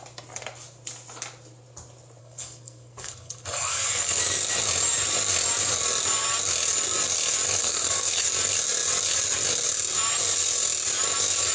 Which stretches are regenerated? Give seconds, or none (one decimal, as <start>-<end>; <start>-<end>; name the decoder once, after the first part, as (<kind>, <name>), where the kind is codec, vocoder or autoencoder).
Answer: 2.2-4.2 (codec, SNAC); 7.6-8.2